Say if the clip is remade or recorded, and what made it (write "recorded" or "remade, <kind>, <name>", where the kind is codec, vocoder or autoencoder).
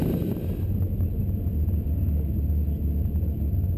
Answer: recorded